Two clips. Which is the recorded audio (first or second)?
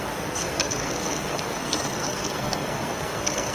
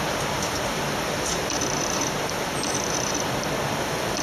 second